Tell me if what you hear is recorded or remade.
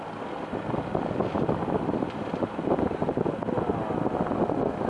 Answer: recorded